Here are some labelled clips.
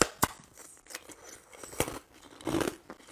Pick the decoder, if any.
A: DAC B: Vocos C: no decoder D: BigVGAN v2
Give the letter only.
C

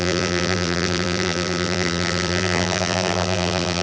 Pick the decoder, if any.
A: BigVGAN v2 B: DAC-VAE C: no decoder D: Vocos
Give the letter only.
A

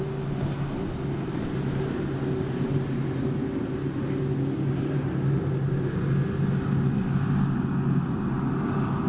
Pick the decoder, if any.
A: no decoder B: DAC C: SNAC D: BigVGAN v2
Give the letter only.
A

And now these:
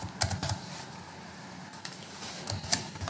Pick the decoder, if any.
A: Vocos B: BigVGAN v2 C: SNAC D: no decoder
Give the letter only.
D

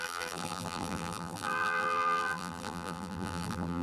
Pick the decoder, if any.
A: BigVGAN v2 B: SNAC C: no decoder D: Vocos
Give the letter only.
A